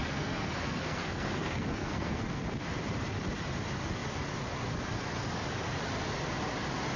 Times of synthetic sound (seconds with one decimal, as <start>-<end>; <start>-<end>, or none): 0.0-2.4